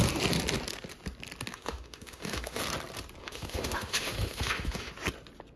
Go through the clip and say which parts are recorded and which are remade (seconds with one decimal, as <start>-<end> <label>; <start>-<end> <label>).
0.0-1.5 recorded; 1.5-2.6 remade; 2.6-3.2 recorded; 3.2-4.9 remade; 4.9-5.6 recorded